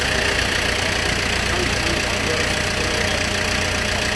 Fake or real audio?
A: real